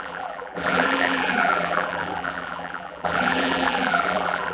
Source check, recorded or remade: remade